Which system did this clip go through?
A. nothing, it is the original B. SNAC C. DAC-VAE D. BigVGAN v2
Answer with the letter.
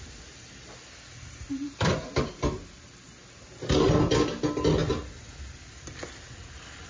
A